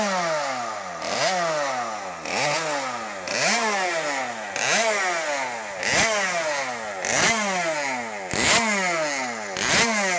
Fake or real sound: real